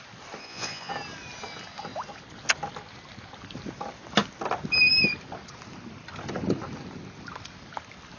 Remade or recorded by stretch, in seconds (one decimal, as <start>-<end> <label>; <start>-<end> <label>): 0.0-0.4 recorded; 0.4-0.9 remade; 0.9-8.2 recorded

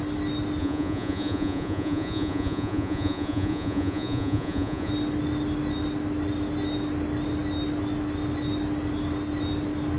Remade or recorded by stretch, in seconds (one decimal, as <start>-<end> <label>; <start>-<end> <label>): 0.0-0.6 recorded; 0.6-4.9 remade; 4.9-10.0 recorded

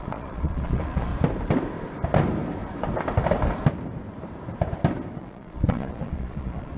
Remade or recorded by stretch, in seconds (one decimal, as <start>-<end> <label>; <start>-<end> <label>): 0.0-1.1 remade; 1.1-5.2 recorded; 5.2-6.8 remade